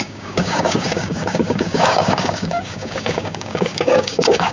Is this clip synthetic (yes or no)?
yes